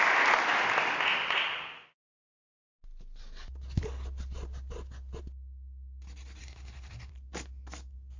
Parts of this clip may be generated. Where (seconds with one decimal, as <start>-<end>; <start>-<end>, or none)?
6.4-7.1